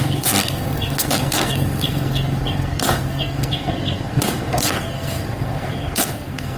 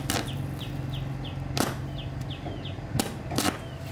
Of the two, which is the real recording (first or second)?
second